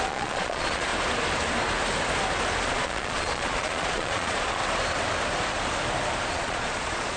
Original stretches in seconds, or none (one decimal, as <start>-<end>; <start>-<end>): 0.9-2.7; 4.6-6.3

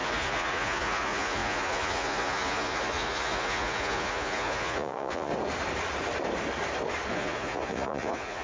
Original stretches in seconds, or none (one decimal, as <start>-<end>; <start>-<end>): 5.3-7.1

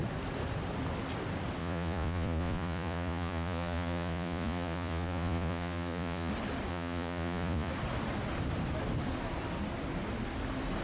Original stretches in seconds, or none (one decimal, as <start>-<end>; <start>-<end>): 0.0-1.6; 6.3-6.7; 7.7-10.8

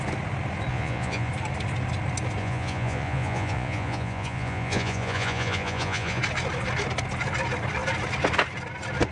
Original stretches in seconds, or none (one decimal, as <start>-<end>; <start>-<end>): 0.0-0.7; 1.3-2.4; 6.2-9.1